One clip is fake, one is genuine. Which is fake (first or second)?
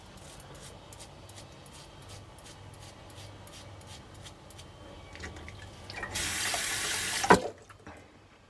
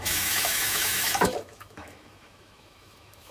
second